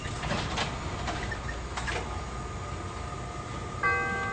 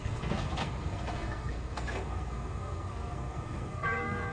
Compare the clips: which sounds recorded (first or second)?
first